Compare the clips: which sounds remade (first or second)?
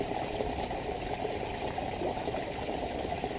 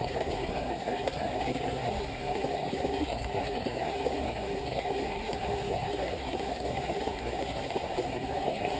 second